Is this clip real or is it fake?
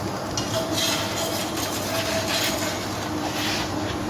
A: real